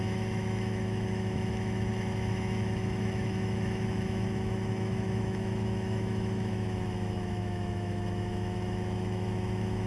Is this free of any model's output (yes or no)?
no